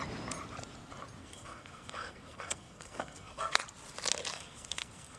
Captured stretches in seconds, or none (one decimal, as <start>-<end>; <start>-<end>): 0.0-1.2; 3.6-4.3